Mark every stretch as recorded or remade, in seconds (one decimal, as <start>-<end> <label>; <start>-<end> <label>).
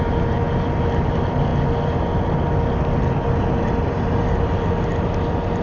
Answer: 0.0-5.6 recorded